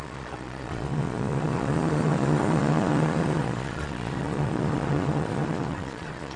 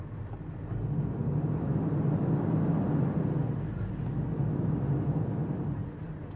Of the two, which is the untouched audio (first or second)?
second